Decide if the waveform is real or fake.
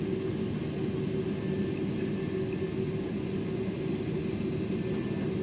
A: real